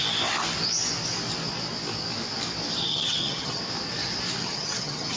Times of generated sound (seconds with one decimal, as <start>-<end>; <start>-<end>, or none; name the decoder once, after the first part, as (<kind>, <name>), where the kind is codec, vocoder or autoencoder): 2.9-3.6 (vocoder, HiFi-GAN); 4.4-5.2